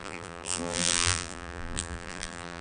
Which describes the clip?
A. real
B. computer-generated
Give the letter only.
B